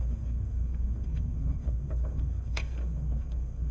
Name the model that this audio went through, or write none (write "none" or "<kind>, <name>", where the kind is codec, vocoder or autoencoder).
codec, SNAC